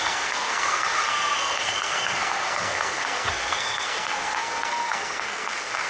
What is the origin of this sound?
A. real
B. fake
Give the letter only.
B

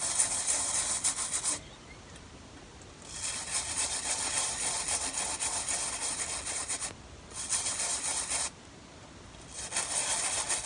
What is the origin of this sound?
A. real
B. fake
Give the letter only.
A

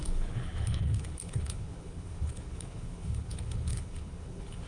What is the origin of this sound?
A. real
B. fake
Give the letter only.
B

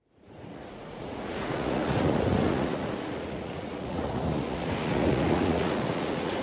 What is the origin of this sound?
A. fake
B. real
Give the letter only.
A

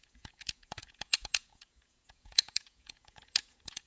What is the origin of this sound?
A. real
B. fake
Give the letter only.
B